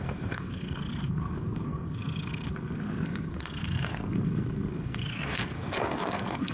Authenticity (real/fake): fake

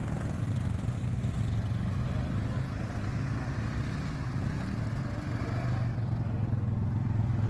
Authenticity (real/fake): real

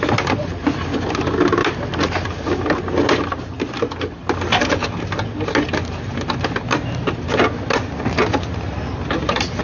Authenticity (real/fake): real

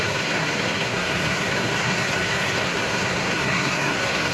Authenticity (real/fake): fake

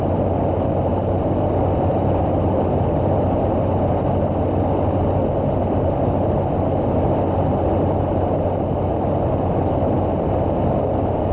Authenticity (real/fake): real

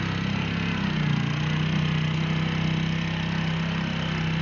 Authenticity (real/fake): real